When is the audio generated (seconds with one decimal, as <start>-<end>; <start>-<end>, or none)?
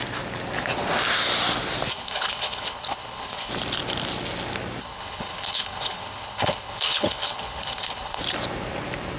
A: 1.9-3.5; 4.8-8.2